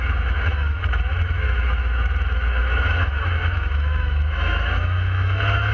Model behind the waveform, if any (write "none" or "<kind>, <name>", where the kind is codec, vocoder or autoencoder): autoencoder, DAC-VAE